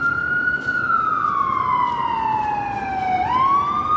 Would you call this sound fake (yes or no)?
no